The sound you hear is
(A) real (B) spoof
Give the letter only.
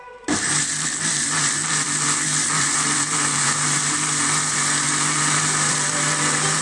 B